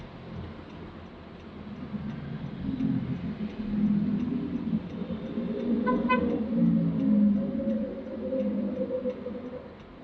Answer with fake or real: real